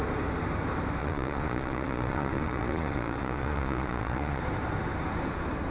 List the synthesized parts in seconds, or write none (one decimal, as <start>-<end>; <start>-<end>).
1.0-4.4